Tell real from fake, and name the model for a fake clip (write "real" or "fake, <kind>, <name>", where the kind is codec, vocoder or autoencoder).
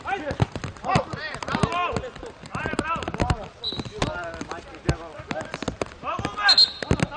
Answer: real